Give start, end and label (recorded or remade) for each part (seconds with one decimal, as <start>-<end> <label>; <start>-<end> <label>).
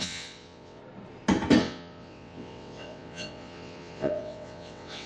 0.0-0.8 remade; 0.8-1.6 recorded; 1.6-5.1 remade